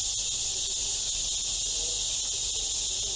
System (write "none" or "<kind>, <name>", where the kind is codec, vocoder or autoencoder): none